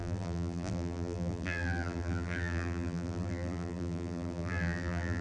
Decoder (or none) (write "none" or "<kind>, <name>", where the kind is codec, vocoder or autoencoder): vocoder, BigVGAN v2